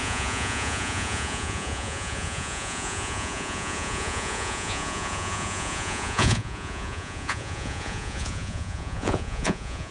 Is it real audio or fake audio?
fake